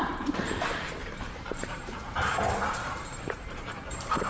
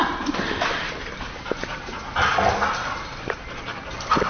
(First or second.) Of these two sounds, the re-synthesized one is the first